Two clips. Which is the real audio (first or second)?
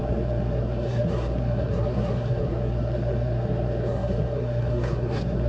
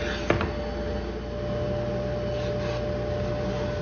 second